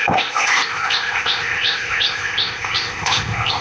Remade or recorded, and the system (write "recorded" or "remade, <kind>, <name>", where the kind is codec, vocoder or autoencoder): remade, codec, ZipCodec